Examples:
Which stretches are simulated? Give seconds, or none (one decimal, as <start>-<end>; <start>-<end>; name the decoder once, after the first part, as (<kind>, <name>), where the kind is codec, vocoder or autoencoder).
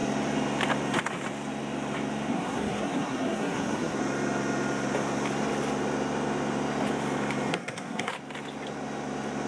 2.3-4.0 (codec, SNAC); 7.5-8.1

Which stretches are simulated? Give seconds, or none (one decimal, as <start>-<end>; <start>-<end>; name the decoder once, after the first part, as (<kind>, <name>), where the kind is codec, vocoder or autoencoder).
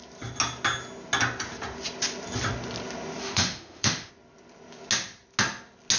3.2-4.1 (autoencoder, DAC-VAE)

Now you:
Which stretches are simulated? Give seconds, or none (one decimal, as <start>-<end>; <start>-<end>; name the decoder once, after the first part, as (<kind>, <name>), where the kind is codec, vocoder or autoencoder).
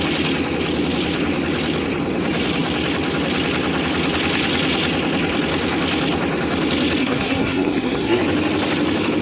7.0-8.2 (codec, SNAC)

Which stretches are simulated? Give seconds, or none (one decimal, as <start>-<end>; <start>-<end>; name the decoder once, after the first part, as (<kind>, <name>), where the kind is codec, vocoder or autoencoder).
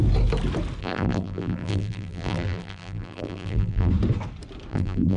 0.8-3.9 (vocoder, BigVGAN v2); 4.7-5.2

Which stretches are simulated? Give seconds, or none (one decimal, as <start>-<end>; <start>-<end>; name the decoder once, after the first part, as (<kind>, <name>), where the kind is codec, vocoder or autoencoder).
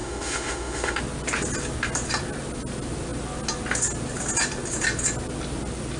0.0-1.0 (autoencoder, DAC-VAE)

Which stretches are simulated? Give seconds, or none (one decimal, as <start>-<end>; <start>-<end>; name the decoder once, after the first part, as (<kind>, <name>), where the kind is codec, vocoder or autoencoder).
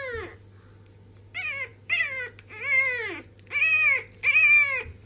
none